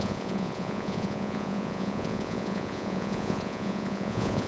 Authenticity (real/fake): fake